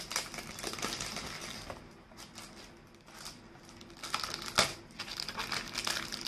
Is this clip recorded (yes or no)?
yes